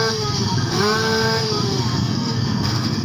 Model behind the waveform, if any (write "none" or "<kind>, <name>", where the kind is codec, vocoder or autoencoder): codec, SNAC